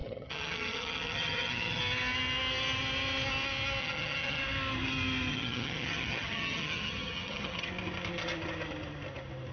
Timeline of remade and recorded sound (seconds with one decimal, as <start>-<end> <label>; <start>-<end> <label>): 0.0-1.8 remade; 1.8-3.8 recorded; 3.8-4.4 remade; 4.4-5.3 recorded; 5.3-7.7 remade; 7.7-9.5 recorded